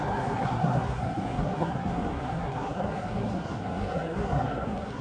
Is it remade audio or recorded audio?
remade